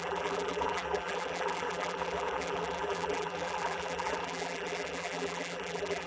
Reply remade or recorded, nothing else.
remade